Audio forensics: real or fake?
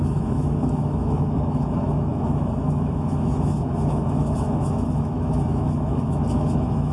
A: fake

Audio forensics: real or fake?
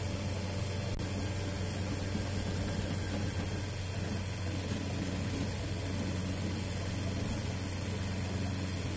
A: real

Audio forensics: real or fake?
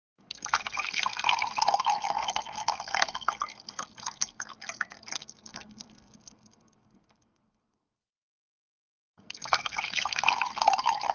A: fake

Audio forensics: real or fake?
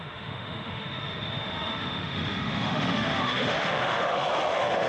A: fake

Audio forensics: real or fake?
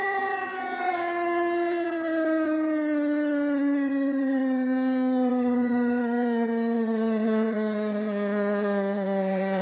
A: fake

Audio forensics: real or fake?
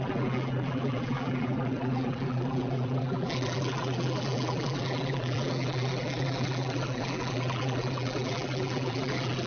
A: fake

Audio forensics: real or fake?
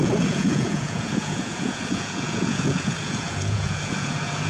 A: fake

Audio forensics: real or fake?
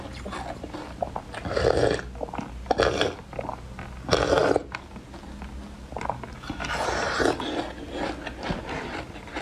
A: real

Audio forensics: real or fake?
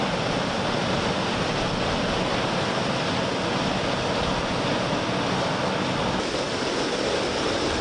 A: real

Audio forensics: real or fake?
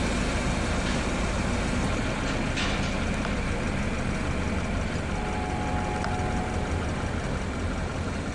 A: real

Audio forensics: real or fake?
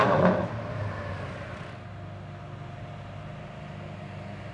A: real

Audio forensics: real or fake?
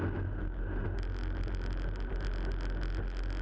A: real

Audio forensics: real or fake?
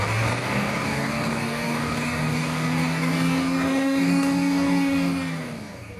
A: fake